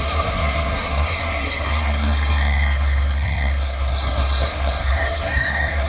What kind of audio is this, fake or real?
fake